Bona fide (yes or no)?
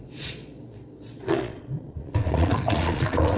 no